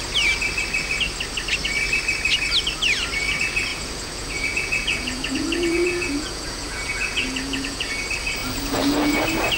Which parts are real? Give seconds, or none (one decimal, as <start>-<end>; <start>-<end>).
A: 0.0-3.7; 7.9-8.4; 9.2-9.6